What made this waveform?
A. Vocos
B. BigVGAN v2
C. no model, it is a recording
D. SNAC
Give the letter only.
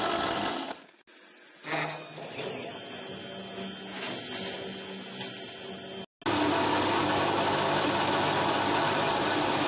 C